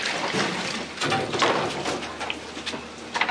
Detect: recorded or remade recorded